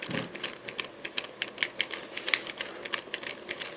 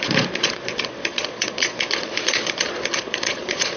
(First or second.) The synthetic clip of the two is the second